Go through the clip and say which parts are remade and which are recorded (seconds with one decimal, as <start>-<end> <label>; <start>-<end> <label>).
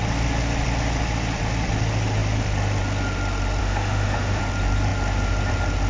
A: 0.0-3.6 recorded; 3.6-4.4 remade; 4.4-5.9 recorded